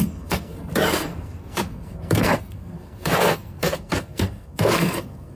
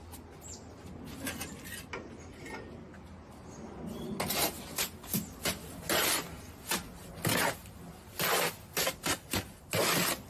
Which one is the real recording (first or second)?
second